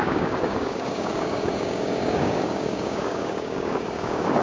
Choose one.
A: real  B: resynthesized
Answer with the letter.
B